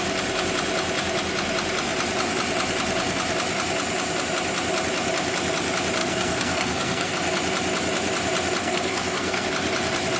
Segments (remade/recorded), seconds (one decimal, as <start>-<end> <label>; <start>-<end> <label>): 0.0-6.0 recorded; 6.0-7.1 remade; 7.1-8.6 recorded; 8.6-9.5 remade; 9.5-10.2 recorded